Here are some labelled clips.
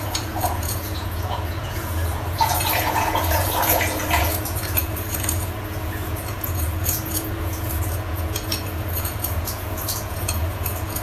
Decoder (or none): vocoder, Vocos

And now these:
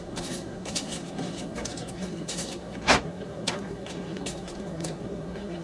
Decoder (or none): codec, SNAC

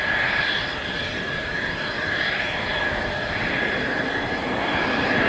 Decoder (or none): none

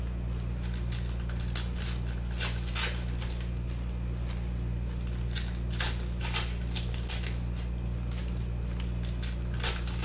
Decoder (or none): none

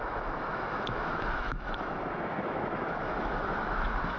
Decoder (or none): autoencoder, DAC-VAE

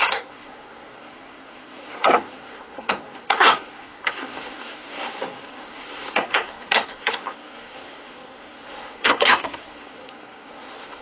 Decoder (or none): codec, SNAC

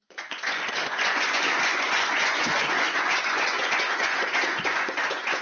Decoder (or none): vocoder, Vocos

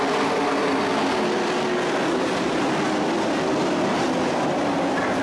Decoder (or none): none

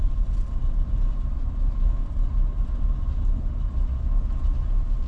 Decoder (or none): none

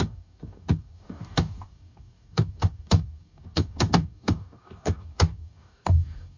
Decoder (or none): codec, DAC